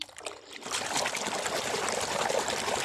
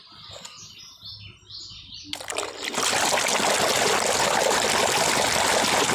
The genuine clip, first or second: second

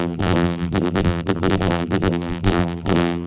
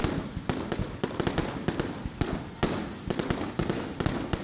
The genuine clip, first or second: second